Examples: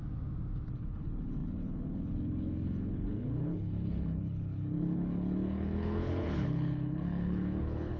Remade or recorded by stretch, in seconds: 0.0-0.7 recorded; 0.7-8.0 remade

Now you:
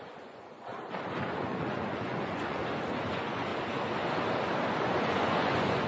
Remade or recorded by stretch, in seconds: 0.0-0.7 remade; 0.7-1.2 recorded; 1.2-2.6 remade; 2.6-3.1 recorded; 3.1-3.5 remade; 3.5-4.8 recorded; 4.8-5.9 remade